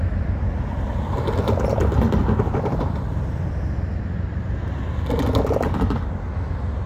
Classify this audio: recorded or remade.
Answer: recorded